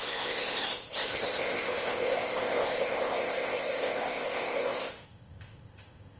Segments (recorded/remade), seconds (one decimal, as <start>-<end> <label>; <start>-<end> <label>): 0.0-6.2 remade